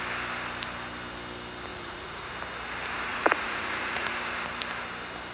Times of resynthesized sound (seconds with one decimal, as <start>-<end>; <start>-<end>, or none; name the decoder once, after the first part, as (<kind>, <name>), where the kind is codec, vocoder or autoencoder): 1.7-2.3 (vocoder, Vocos); 3.1-4.1